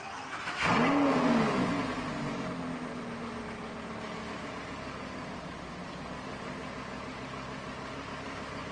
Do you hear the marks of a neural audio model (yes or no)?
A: no